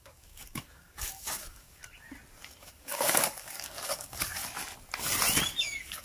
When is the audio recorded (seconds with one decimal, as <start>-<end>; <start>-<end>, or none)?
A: 1.8-2.6; 4.4-5.6